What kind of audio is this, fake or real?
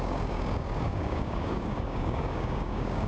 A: fake